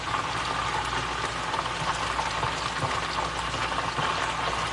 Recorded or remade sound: recorded